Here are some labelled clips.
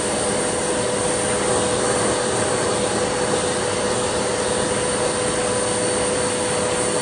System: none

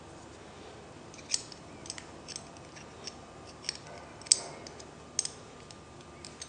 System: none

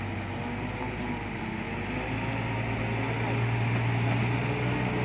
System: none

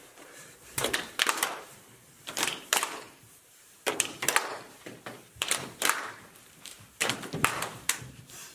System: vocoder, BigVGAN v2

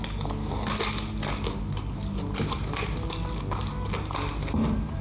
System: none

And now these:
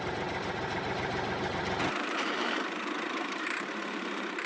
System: vocoder, BigVGAN v2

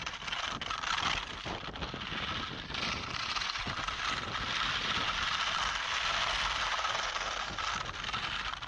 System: none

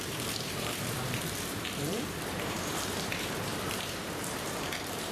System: vocoder, BigVGAN v2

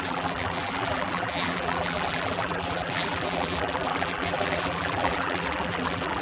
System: vocoder, BigVGAN v2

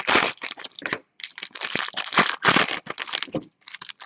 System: vocoder, BigVGAN v2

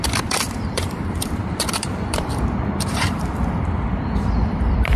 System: vocoder, BigVGAN v2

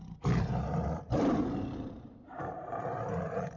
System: vocoder, BigVGAN v2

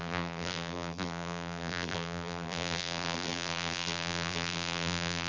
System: vocoder, BigVGAN v2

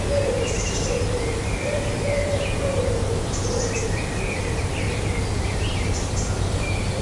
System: vocoder, BigVGAN v2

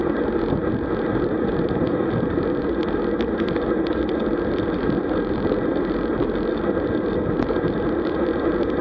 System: none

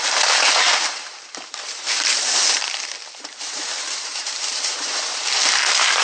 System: vocoder, BigVGAN v2